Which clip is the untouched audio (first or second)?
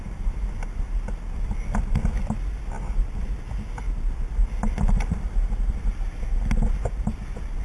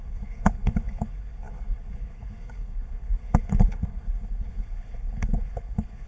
first